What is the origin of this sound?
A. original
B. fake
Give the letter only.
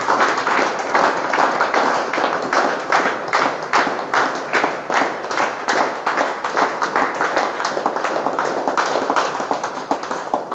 B